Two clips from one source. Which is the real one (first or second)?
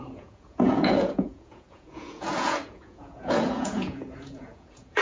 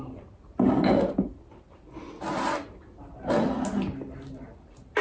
second